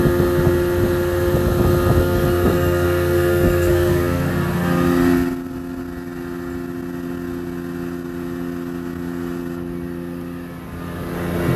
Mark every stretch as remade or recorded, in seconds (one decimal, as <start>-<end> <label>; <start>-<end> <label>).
0.0-2.0 recorded; 2.0-4.3 remade; 4.3-11.6 recorded